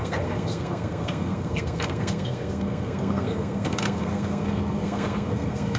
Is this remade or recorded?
remade